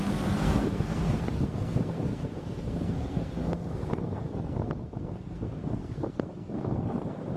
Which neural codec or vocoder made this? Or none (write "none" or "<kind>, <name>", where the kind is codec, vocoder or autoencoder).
codec, SNAC